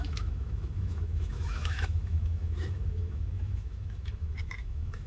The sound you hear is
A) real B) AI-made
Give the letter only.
B